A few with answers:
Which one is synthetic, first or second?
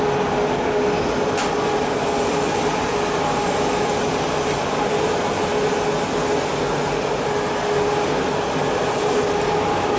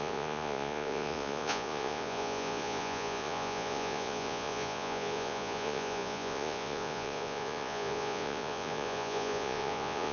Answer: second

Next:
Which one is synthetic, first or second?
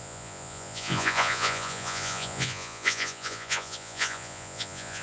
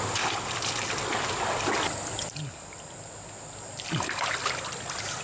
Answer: first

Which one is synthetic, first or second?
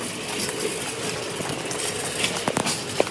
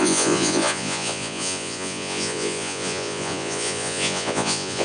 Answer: second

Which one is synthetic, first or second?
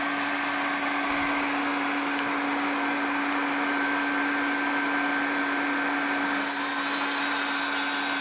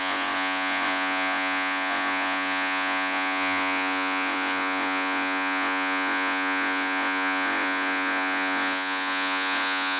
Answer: second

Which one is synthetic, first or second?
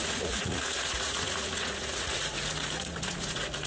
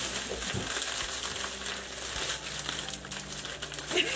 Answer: first